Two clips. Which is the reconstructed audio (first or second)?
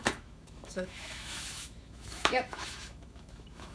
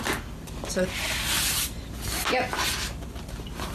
first